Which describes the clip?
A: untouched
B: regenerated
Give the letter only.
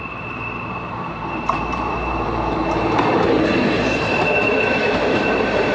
B